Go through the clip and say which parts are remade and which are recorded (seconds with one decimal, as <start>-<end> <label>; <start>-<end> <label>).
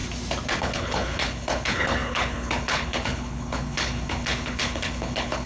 0.0-0.6 recorded; 0.6-5.5 remade